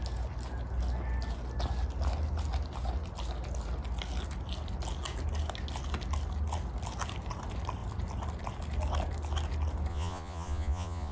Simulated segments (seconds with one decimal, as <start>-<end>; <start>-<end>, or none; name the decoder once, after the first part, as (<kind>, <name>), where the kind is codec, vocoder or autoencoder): 9.9-11.1 (vocoder, Vocos)